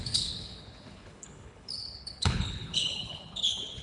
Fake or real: fake